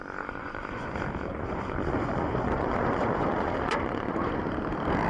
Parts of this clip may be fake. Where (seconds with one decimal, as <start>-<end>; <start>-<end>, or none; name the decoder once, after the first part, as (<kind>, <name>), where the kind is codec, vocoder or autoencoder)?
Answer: 0.4-0.9 (vocoder, Vocos); 1.3-4.4